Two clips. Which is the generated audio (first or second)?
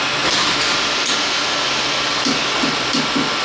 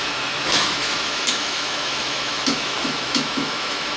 second